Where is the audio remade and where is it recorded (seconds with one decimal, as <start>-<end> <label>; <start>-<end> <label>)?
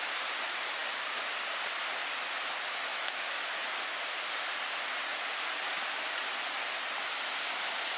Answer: 0.0-2.9 recorded; 2.9-3.4 remade; 3.4-8.0 recorded